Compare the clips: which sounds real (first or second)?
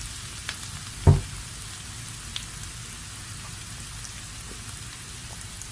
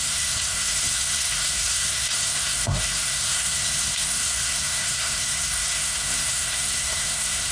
first